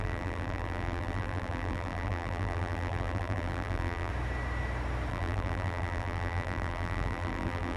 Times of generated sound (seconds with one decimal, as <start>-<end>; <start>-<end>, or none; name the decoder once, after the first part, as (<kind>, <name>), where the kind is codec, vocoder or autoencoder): 0.0-4.1 (vocoder, BigVGAN v2); 5.1-7.8